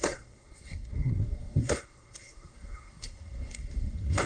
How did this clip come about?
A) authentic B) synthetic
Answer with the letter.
B